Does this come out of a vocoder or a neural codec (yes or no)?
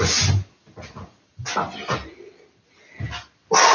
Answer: no